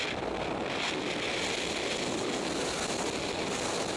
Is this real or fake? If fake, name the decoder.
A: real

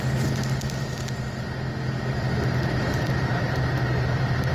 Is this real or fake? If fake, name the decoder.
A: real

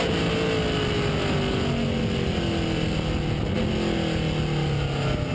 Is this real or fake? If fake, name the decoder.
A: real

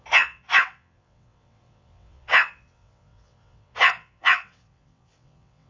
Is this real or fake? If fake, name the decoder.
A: fake, vocoder, WaveNeXt